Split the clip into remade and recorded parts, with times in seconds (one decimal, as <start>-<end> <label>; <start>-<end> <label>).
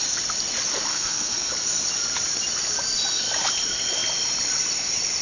0.0-0.9 recorded; 0.9-1.5 remade; 1.5-5.2 recorded